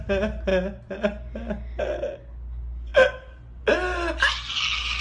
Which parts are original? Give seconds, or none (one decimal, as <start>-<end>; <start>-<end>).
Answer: 0.0-5.0